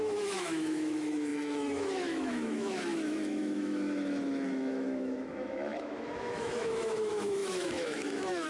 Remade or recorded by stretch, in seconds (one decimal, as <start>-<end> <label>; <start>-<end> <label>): 0.0-8.5 remade